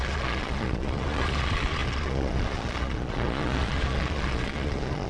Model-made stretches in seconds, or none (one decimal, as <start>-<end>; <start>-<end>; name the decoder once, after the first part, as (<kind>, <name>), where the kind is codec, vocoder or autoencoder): 0.0-5.1 (vocoder, Vocos)